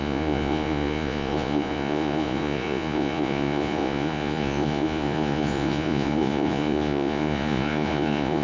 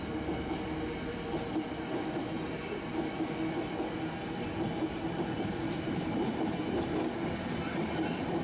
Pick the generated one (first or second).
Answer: first